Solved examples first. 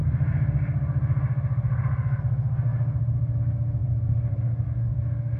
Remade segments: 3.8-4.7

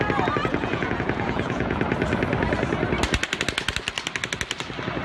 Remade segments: 0.5-1.8

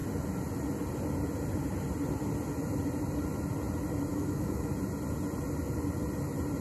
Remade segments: 4.1-4.7

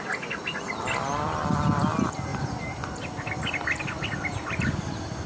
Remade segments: none